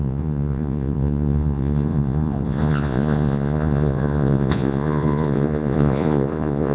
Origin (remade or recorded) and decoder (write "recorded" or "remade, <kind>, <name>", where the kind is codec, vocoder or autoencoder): remade, vocoder, Vocos